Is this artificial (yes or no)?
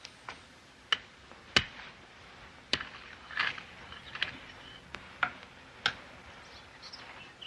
no